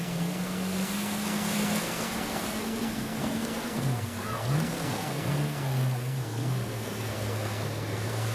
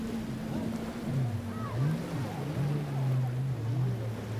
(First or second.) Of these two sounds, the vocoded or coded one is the first